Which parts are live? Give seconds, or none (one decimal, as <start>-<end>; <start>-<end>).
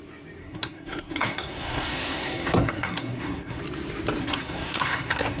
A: 0.0-0.4; 3.6-4.2